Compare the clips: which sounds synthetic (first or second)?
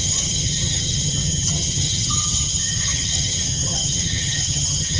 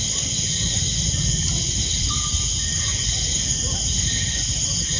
first